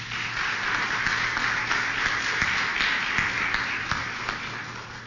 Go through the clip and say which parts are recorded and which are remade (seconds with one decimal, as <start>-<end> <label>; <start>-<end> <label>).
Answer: 0.0-5.1 recorded

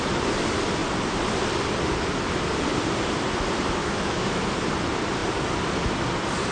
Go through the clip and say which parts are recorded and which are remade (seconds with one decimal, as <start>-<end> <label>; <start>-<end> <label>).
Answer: 0.0-3.8 recorded; 3.8-4.4 remade; 4.4-6.5 recorded

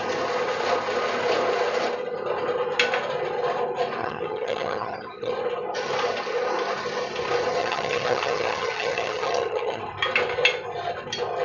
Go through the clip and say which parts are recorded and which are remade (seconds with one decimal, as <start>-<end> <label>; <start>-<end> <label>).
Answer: 0.0-4.0 recorded; 4.0-5.3 remade; 5.3-7.6 recorded; 7.6-9.8 remade; 9.8-11.4 recorded

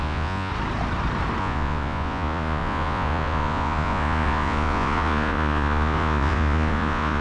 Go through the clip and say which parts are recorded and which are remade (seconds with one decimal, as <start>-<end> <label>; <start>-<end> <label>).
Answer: 0.0-0.5 remade; 0.5-1.4 recorded; 1.4-7.2 remade